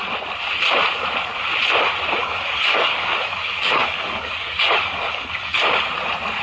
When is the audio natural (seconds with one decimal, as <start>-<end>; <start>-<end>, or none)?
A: 0.0-2.2; 5.6-6.4